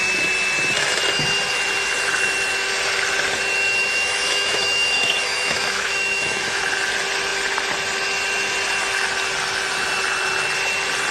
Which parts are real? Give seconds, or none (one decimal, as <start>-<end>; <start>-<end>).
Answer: 0.0-3.8; 6.6-11.1